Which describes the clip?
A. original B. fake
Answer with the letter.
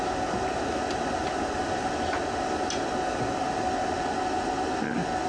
A